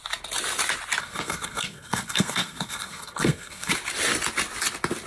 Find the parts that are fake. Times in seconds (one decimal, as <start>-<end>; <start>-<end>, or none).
1.0-3.7